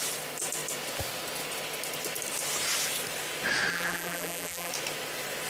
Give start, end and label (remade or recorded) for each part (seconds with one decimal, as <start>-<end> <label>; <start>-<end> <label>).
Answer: 0.0-3.7 recorded; 3.7-4.7 remade; 4.7-5.5 recorded